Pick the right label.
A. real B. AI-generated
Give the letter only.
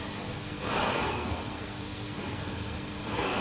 B